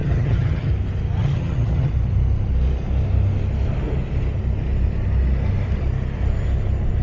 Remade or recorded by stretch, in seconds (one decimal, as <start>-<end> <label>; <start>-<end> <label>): 0.0-0.7 remade; 0.7-1.2 recorded; 1.2-1.9 remade; 1.9-7.0 recorded